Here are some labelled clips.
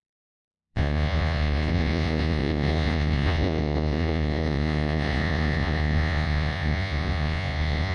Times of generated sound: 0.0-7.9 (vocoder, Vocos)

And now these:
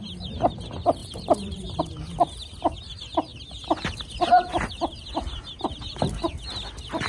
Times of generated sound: 1.0-1.8 (vocoder, BigVGAN v2)

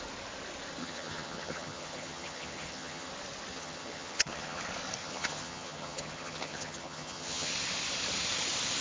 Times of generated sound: 0.8-3.1 (vocoder, HiFi-GAN); 3.5-4.6; 5.0-7.5

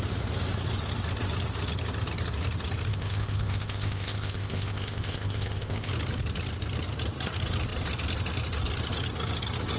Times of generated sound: 2.9-5.9 (codec, ZipCodec)

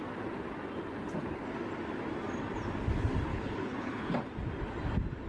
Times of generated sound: 3.3-4.1 (codec, HILCodec)